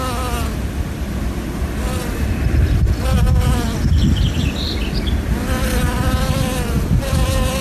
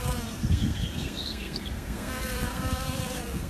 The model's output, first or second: second